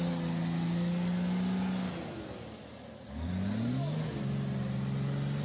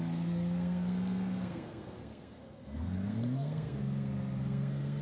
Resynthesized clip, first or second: second